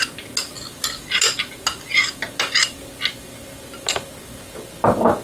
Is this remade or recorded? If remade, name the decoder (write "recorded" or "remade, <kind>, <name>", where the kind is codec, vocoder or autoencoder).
recorded